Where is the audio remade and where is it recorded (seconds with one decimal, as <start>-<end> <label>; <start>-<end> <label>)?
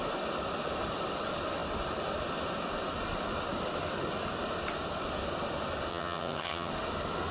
0.0-5.9 recorded; 5.9-6.7 remade; 6.7-7.3 recorded